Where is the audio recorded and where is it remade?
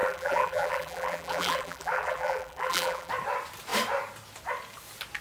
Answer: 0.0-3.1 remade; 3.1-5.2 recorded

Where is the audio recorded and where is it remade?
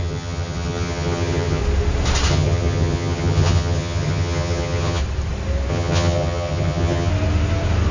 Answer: 0.0-1.6 remade; 1.6-2.3 recorded; 2.3-5.0 remade; 5.0-5.7 recorded; 5.7-7.1 remade; 7.1-7.9 recorded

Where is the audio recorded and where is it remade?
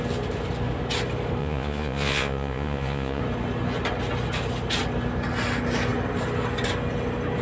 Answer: 0.0-1.4 recorded; 1.4-3.2 remade; 3.2-7.4 recorded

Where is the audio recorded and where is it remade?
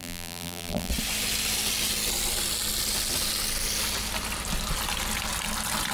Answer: 0.0-0.9 remade; 0.9-5.9 recorded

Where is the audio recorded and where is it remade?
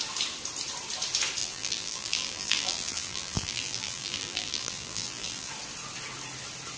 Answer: 0.0-1.4 recorded; 1.4-5.5 remade; 5.5-6.8 recorded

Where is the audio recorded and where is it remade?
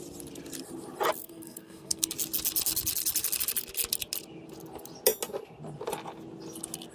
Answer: 0.0-1.2 recorded; 1.2-2.1 remade; 2.1-6.9 recorded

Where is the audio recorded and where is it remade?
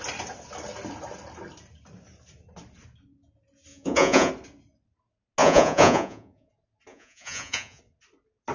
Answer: 0.0-3.7 recorded; 3.7-4.3 remade; 4.3-5.4 recorded; 5.4-6.5 remade; 6.5-6.9 recorded; 6.9-7.8 remade; 7.8-8.5 recorded